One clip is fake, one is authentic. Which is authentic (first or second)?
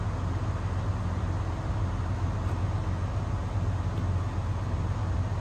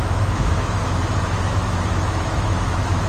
first